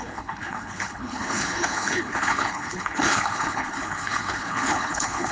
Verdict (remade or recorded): remade